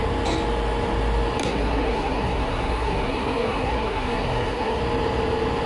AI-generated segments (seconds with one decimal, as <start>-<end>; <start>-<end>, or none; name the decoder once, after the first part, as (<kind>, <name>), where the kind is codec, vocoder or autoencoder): 1.4-4.8 (codec, SNAC)

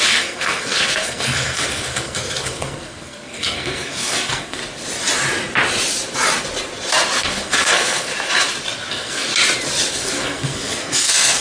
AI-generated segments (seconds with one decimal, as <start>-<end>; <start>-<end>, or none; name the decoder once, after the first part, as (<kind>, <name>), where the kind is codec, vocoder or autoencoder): 0.0-4.6 (codec, SNAC); 7.2-8.1; 8.9-9.3; 9.9-11.4

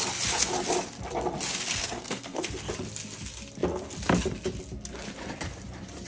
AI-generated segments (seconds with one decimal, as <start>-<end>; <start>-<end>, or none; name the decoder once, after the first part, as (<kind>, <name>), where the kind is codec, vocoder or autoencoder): 1.7-2.7 (codec, SNAC)

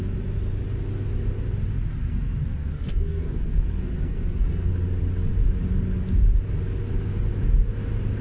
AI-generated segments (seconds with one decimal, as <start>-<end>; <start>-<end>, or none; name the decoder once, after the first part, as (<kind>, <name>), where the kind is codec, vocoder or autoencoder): 1.9-4.7 (codec, SNAC)